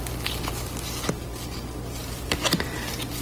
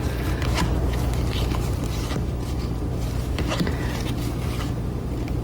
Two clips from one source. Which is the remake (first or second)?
second